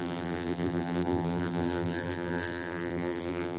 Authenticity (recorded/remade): remade